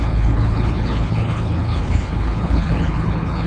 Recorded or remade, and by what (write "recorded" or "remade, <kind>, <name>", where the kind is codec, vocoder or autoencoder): remade, codec, HILCodec